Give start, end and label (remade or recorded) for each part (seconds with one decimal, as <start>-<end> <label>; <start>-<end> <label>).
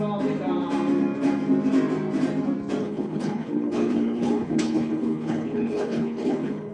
0.0-2.8 recorded; 2.8-6.7 remade